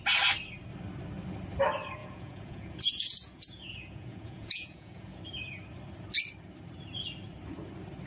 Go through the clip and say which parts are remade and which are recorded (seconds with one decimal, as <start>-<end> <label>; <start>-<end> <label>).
0.0-2.0 recorded; 2.0-5.2 remade; 5.2-8.1 recorded